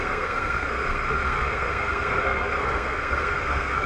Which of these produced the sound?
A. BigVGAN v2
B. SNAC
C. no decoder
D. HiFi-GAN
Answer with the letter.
B